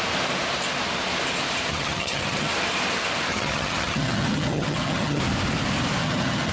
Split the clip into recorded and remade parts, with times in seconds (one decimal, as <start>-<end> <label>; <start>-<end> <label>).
0.0-1.7 recorded; 1.7-2.5 remade; 2.5-3.3 recorded; 3.3-5.2 remade; 5.2-6.0 recorded; 6.0-6.5 remade